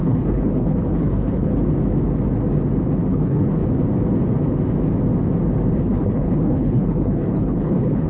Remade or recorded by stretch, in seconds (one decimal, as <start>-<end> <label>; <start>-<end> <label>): 0.0-1.5 remade; 1.5-3.1 recorded; 3.1-3.6 remade; 3.6-5.8 recorded; 5.8-8.1 remade

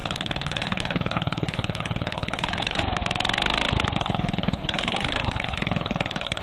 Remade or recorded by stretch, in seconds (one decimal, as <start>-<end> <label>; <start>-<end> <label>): 0.0-2.8 remade; 2.8-4.0 recorded; 4.0-6.4 remade

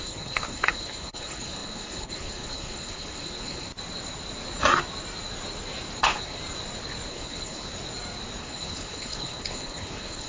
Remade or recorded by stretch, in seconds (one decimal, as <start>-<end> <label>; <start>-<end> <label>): 0.0-3.7 remade; 3.7-6.0 recorded; 6.0-6.4 remade; 6.4-7.1 recorded; 7.1-7.7 remade; 7.7-8.4 recorded; 8.4-10.3 remade

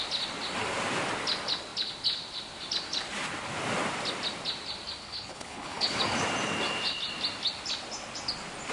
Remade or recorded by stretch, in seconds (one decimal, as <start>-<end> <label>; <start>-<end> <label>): 0.0-5.0 recorded; 5.0-6.0 remade; 6.0-8.7 recorded

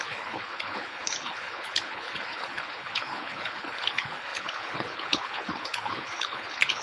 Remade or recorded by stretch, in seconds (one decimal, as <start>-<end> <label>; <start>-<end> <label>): 0.0-6.8 remade

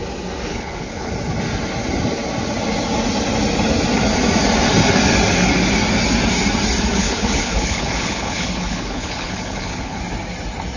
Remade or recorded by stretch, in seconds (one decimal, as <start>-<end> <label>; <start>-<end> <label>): 0.0-0.5 recorded; 0.5-1.1 remade; 1.1-7.0 recorded; 7.0-10.0 remade; 10.0-10.8 recorded

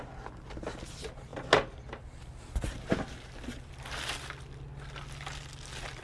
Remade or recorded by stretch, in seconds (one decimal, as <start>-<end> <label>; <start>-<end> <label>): 0.0-6.0 recorded